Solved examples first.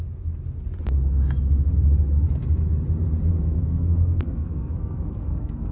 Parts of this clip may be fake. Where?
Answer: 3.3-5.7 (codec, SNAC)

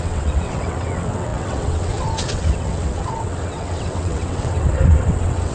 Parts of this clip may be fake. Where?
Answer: 0.0-5.5 (vocoder, WaveNeXt)